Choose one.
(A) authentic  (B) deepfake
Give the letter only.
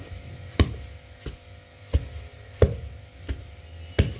A